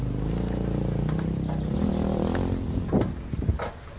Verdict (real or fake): real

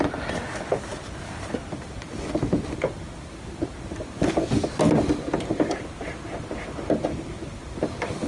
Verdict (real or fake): real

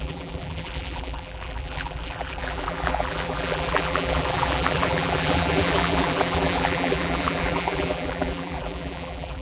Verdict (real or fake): fake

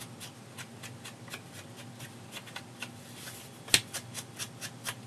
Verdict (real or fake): real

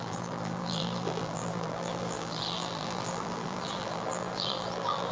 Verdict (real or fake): fake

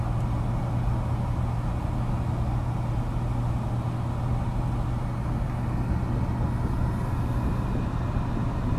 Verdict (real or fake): real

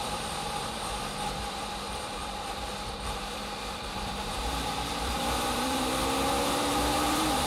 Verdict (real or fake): fake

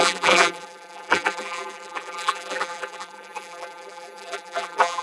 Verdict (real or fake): fake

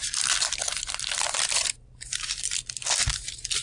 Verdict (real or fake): real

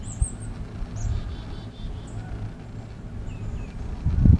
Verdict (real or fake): real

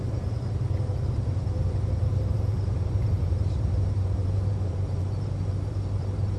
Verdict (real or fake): fake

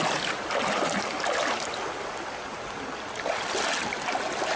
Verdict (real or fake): real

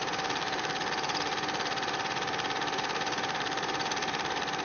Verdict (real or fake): fake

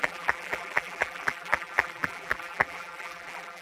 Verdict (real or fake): fake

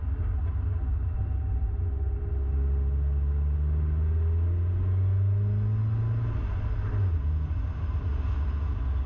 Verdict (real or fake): real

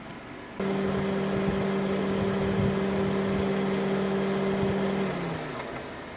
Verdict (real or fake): real